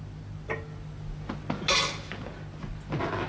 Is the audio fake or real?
real